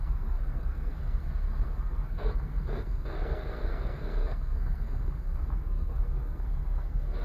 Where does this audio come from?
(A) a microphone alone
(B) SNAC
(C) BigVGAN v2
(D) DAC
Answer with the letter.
B